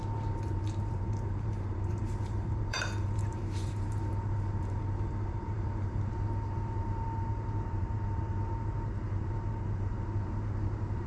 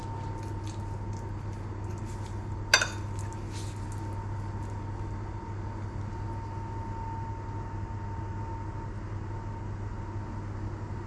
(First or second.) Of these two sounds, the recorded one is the second